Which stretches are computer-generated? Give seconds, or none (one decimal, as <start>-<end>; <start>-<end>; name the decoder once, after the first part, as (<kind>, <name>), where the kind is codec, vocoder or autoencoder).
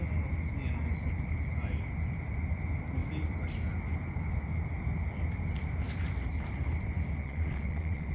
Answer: 7.2-8.1 (vocoder, WaveNeXt)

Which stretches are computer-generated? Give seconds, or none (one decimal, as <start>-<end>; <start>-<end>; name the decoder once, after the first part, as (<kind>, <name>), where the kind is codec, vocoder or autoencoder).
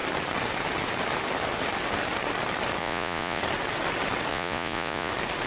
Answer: 2.8-3.4 (vocoder, Vocos); 4.3-5.1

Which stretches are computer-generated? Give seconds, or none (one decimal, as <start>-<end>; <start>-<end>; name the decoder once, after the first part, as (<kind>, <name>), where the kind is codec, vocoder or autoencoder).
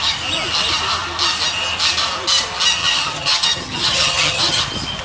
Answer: 2.8-4.6 (vocoder, HiFi-GAN)